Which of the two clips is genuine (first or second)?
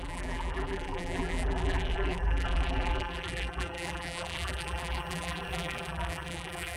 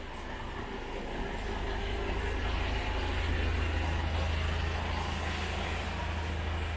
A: second